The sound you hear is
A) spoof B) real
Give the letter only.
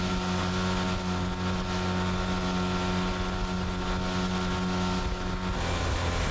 B